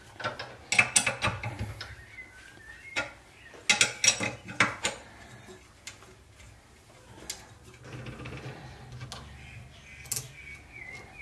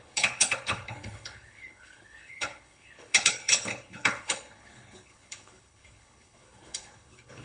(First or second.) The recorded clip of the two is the first